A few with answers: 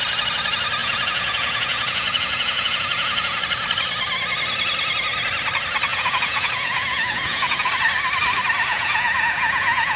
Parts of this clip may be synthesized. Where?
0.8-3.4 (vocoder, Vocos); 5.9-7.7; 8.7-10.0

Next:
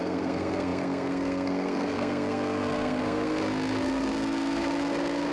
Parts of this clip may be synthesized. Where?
0.0-5.3 (codec, SNAC)

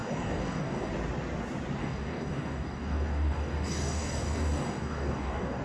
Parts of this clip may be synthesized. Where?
0.0-0.9 (codec, DAC); 1.8-5.6

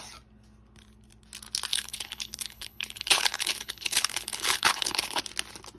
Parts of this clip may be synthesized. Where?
1.7-5.2 (codec, HILCodec)

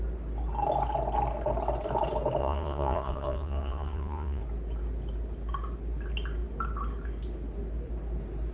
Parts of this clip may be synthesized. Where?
2.4-4.4 (vocoder, Vocos)

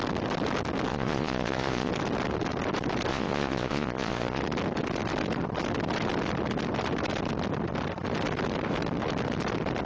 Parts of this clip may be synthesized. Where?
0.9-1.9 (vocoder, Vocos); 3.1-4.4